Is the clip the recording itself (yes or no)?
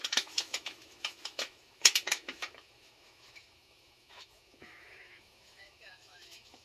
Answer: no